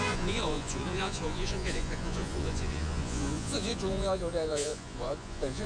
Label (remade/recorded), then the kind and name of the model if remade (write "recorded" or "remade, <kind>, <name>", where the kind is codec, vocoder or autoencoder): remade, vocoder, Vocos